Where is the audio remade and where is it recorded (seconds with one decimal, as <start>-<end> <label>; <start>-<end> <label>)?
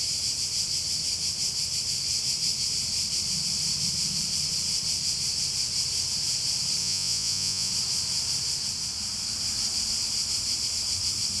0.0-6.8 recorded; 6.8-7.7 remade; 7.7-11.4 recorded